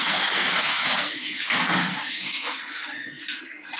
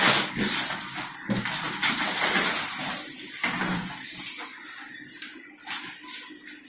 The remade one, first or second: first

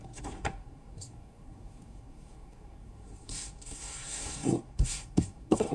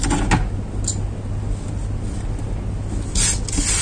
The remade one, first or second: first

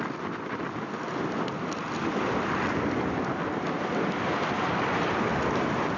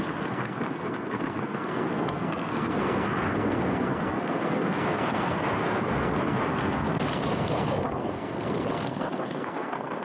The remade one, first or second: second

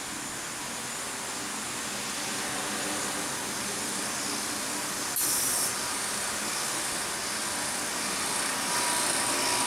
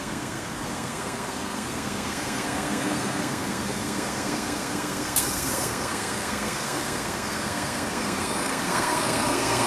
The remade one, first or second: second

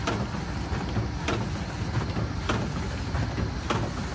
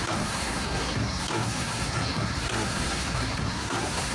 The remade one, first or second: second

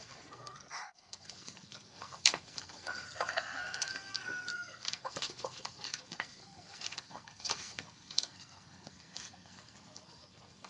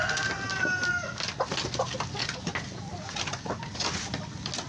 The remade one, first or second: first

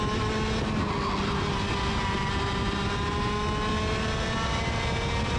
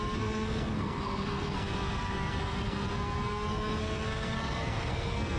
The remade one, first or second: second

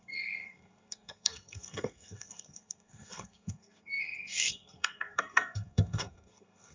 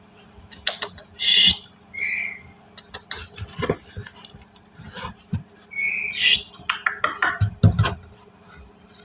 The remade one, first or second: first